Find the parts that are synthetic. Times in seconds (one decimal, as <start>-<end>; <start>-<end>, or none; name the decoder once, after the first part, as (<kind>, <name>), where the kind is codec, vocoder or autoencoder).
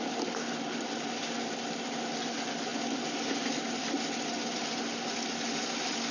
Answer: none